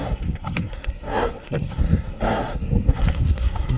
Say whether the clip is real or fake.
fake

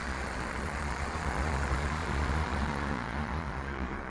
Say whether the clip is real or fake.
fake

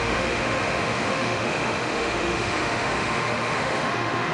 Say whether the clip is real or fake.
fake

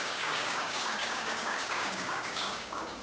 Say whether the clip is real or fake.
fake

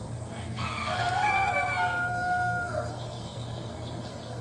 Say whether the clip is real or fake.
fake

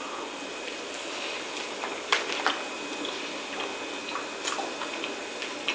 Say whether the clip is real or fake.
real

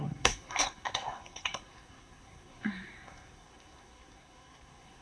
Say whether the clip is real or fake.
fake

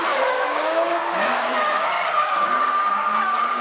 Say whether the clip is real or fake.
fake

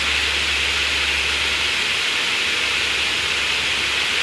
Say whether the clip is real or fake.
real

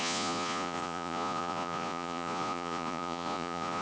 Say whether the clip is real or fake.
fake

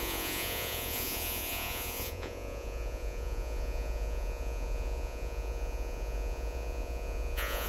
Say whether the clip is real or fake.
fake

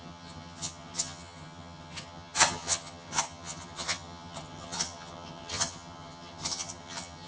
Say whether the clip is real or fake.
fake